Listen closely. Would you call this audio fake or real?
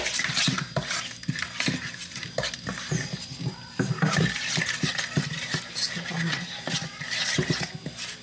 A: real